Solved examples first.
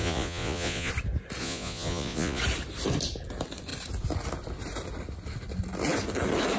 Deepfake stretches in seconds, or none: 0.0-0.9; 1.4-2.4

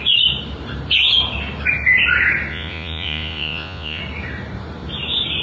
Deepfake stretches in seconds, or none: 2.5-4.0

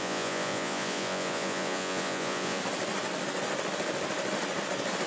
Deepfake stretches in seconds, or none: 0.0-2.6

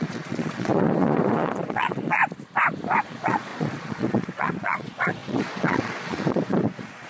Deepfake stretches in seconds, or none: 0.0-2.2; 3.0-7.1

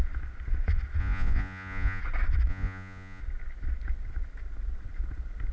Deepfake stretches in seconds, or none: 1.0-2.0; 2.5-3.2

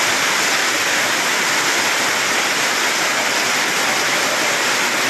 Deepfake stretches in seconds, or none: none